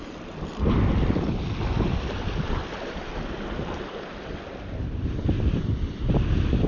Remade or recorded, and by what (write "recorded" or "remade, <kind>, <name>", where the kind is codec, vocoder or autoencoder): recorded